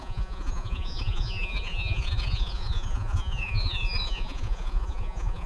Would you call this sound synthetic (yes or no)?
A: yes